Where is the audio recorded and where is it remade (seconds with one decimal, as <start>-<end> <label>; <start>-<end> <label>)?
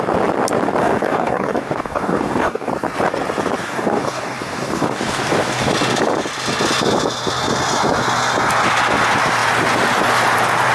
0.0-0.8 recorded; 0.8-2.7 remade; 2.7-3.6 recorded; 3.6-5.7 remade; 5.7-10.7 recorded